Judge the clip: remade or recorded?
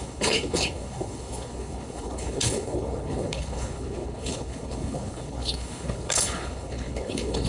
remade